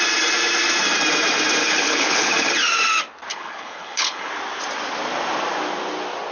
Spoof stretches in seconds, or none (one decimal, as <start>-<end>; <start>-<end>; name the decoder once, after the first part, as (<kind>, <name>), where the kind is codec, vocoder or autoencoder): 1.6-2.3 (codec, HILCodec); 3.3-4.3